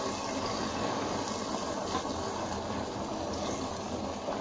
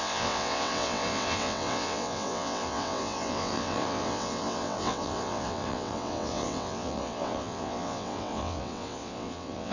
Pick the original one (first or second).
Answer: first